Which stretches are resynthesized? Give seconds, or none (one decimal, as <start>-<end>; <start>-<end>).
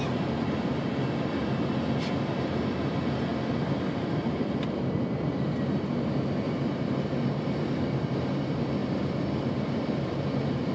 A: 3.3-5.3